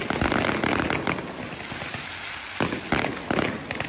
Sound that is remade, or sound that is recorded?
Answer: recorded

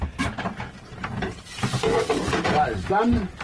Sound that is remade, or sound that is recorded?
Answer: recorded